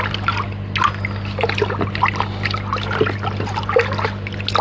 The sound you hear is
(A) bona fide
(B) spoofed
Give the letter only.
A